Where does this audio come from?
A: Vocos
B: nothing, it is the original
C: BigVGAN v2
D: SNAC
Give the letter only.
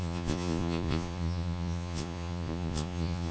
A